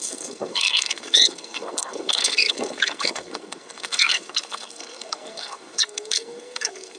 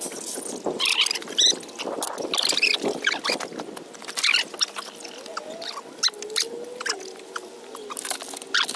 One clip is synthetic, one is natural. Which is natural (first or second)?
second